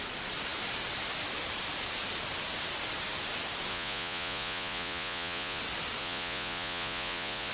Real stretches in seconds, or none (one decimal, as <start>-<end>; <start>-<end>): 0.0-3.7; 5.6-6.0